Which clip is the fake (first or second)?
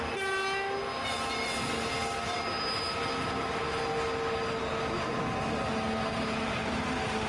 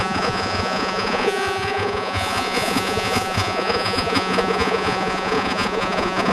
second